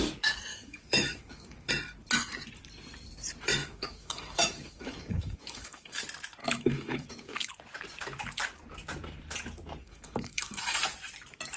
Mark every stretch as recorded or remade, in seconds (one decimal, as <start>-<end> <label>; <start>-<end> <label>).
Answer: 0.0-0.5 recorded; 0.5-1.7 remade; 1.7-3.6 recorded; 3.6-6.0 remade; 6.0-6.4 recorded; 6.4-7.5 remade; 7.5-9.8 recorded; 9.8-10.8 remade; 10.8-11.6 recorded